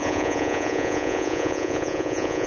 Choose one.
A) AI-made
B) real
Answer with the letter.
A